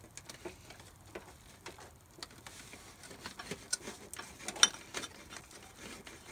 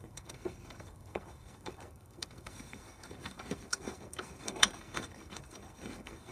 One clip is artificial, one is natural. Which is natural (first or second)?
first